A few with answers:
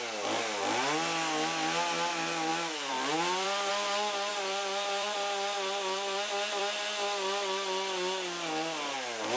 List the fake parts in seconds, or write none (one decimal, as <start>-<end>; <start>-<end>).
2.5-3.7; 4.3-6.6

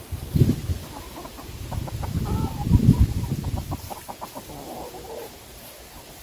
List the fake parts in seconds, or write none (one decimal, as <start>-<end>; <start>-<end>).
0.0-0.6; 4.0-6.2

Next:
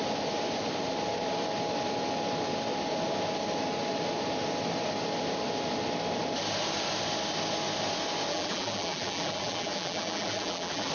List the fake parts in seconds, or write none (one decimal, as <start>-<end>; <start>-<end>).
8.3-10.9

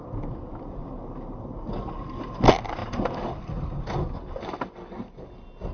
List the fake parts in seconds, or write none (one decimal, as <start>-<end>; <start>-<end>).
2.8-3.7